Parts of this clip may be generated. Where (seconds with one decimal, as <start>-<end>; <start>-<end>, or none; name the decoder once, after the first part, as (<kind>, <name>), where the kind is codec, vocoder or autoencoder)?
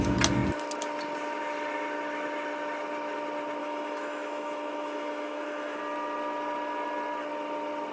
3.6-5.8 (autoencoder, DAC-VAE)